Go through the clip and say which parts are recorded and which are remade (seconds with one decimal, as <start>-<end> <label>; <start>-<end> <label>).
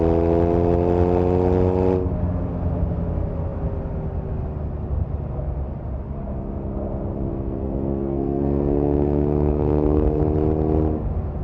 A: 0.0-7.3 recorded; 7.3-10.2 remade; 10.2-11.4 recorded